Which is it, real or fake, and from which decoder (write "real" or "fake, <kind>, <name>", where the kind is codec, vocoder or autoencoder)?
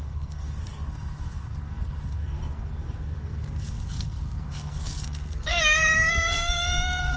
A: fake, codec, SNAC